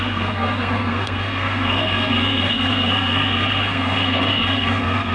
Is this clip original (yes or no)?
no